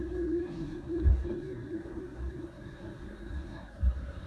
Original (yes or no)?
no